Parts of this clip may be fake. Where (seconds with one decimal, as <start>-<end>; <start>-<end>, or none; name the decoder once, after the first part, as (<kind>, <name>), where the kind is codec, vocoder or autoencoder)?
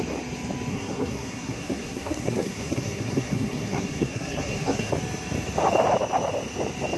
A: 0.7-4.9 (codec, SNAC)